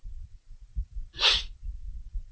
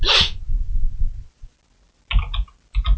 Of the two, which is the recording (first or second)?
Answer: second